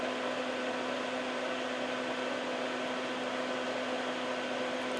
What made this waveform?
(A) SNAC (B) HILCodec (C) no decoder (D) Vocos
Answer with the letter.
C